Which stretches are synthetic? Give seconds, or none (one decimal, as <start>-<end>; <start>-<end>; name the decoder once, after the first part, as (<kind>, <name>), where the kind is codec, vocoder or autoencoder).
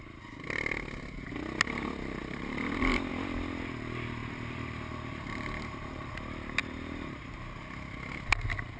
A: 4.2-5.9 (vocoder, BigVGAN v2); 6.6-7.6